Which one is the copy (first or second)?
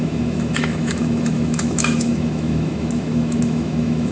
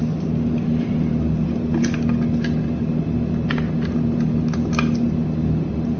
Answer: first